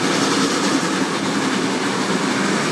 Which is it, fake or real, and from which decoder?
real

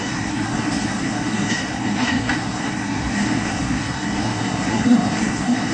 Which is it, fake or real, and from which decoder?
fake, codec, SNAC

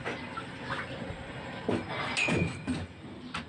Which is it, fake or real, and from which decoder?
real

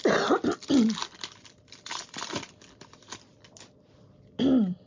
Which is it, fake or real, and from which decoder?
real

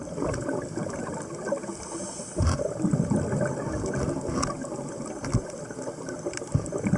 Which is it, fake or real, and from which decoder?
real